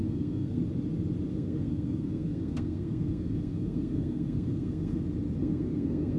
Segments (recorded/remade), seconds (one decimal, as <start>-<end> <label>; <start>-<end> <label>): 0.0-0.6 remade; 0.6-1.3 recorded; 1.3-5.0 remade; 5.0-5.4 recorded; 5.4-6.2 remade